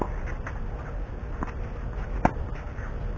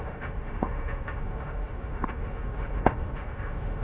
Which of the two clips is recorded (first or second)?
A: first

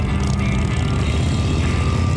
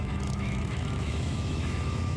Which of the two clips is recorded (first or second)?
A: first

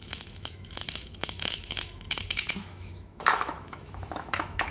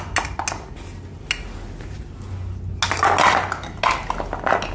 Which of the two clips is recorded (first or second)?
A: second